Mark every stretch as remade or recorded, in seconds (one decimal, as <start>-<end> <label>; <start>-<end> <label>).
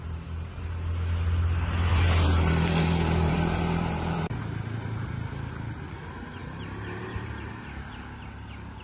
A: 0.0-1.9 recorded; 1.9-5.5 remade; 5.5-6.4 recorded; 6.4-7.5 remade; 7.5-8.8 recorded